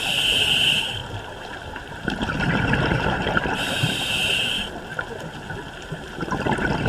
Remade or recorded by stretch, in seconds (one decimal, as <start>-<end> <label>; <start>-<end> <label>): 0.0-1.0 recorded; 1.0-3.6 remade; 3.6-4.9 recorded; 4.9-6.2 remade; 6.2-6.9 recorded